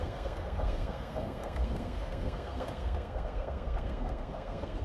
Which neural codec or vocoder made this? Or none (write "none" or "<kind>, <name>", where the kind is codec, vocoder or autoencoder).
codec, SNAC